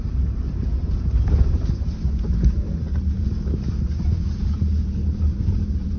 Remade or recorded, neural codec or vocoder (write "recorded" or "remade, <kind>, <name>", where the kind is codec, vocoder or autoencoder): remade, vocoder, BigVGAN v2